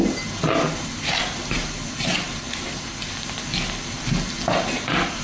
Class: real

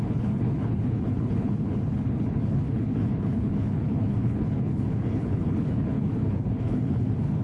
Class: fake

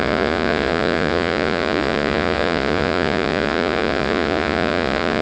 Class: fake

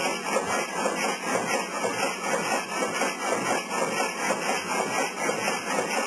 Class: real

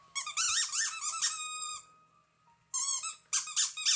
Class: real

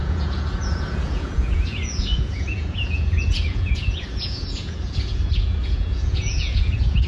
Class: fake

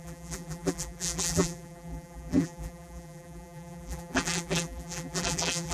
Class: fake